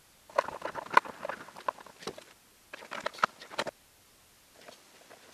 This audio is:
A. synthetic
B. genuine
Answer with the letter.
B